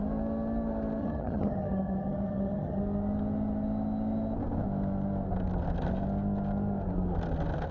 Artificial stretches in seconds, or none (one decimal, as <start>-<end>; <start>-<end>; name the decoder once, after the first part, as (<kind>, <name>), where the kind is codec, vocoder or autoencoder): 1.0-2.8 (vocoder, HiFi-GAN)